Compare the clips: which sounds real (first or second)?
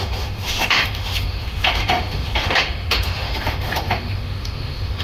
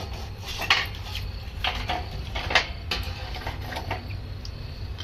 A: second